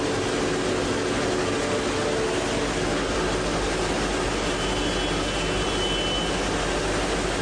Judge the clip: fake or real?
real